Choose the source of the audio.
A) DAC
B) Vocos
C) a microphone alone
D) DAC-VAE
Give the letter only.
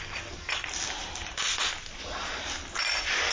C